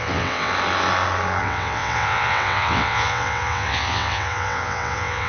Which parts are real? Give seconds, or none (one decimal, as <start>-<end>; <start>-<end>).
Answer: 0.5-1.4